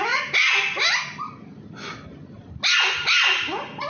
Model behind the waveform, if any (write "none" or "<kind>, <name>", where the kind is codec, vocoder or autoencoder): none